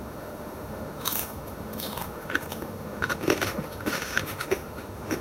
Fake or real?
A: fake